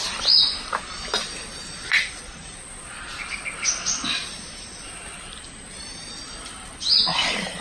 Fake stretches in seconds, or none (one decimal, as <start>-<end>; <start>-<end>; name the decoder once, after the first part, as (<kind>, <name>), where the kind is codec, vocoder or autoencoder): none